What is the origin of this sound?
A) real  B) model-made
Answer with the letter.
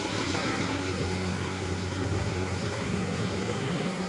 B